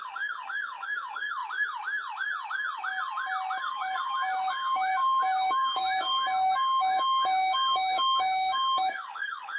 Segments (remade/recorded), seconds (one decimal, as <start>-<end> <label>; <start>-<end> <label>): 0.0-1.4 remade; 1.4-3.6 recorded; 3.6-9.6 remade